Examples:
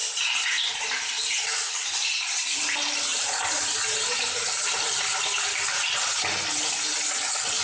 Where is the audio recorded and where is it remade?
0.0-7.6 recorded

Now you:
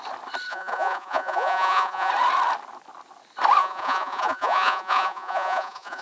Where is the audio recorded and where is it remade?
0.0-0.5 recorded; 0.5-2.1 remade; 2.1-3.6 recorded; 3.6-6.0 remade

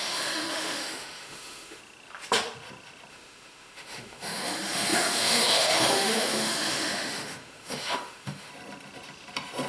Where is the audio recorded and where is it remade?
0.0-1.8 remade; 1.8-3.1 recorded; 3.1-8.5 remade; 8.5-9.7 recorded